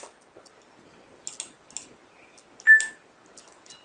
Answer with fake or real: real